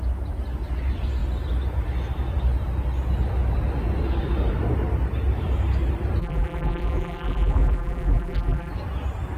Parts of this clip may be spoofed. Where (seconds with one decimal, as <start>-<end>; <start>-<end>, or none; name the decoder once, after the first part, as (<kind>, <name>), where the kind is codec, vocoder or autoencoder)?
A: 6.2-8.7 (vocoder, BigVGAN v2)